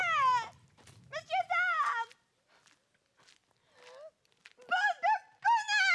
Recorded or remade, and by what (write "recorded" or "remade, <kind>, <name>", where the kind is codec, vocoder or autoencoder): recorded